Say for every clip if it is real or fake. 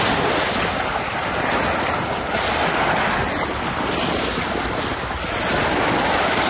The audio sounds real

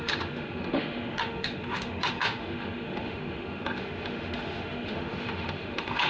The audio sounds fake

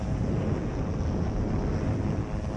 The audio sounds real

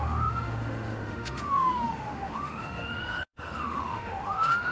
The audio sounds fake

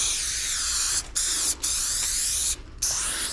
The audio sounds real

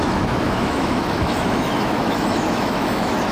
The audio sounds fake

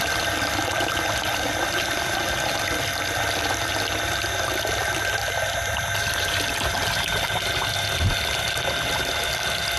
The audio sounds real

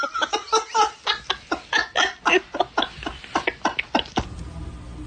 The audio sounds real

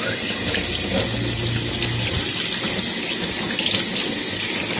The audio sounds real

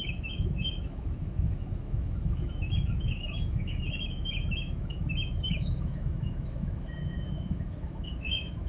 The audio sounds fake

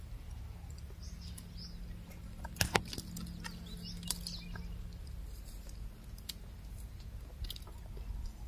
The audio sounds real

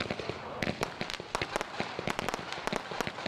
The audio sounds real